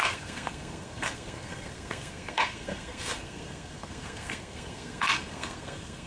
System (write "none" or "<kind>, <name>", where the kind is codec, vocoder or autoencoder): codec, SNAC